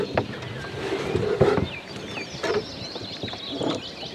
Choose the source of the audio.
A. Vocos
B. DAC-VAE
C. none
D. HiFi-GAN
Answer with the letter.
C